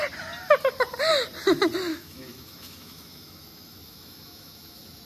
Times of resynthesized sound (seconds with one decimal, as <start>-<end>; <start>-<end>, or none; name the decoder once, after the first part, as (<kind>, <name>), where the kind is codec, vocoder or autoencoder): 1.9-5.0 (autoencoder, DAC-VAE)